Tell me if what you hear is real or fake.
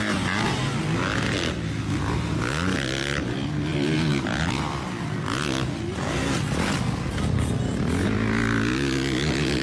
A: real